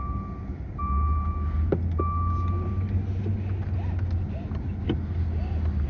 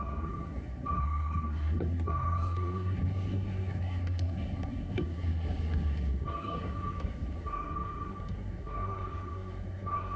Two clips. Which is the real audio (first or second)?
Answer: first